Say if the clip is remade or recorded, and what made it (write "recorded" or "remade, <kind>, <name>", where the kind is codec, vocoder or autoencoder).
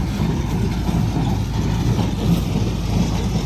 recorded